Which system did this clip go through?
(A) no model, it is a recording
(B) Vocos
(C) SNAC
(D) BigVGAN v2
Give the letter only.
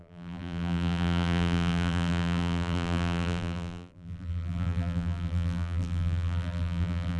D